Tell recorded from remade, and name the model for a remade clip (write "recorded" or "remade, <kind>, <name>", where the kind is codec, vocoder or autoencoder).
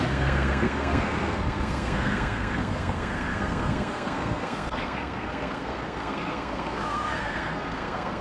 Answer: remade, codec, SNAC